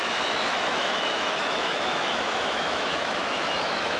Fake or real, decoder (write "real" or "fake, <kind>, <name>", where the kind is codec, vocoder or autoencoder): fake, autoencoder, DAC-VAE